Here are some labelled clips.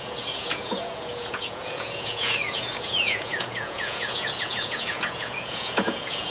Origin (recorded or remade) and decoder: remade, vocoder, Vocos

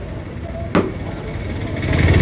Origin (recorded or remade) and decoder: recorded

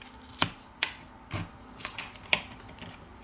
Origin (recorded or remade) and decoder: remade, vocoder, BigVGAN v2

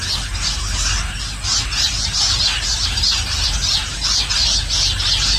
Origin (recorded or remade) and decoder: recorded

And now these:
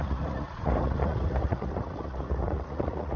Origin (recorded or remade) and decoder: remade, vocoder, Vocos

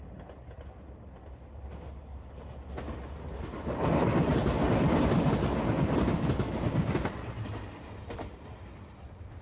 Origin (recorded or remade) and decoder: recorded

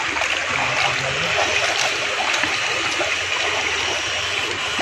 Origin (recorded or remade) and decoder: recorded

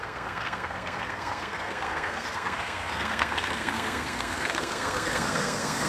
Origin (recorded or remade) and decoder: remade, codec, SNAC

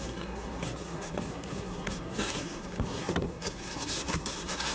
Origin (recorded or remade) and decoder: remade, codec, SNAC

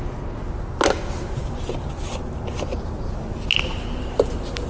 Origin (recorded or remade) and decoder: recorded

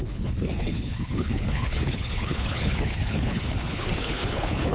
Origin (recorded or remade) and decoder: remade, codec, HILCodec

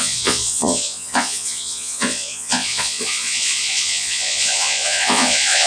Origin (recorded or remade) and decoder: remade, vocoder, Vocos